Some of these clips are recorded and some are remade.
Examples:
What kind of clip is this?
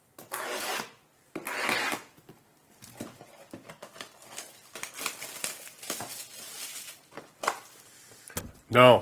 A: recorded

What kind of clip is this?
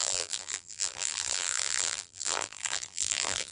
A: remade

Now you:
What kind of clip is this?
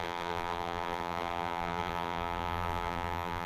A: remade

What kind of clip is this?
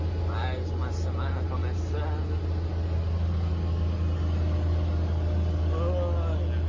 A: recorded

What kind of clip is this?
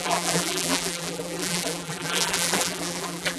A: remade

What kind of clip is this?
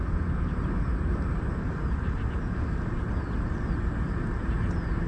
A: recorded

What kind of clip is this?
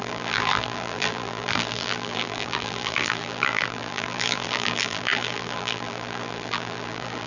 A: remade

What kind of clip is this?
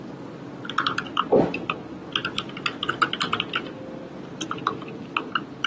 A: recorded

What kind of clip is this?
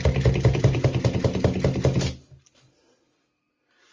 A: recorded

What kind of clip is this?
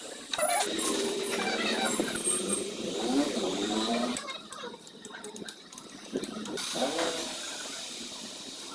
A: remade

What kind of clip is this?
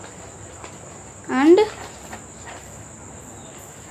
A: recorded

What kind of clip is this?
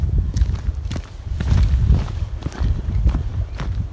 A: remade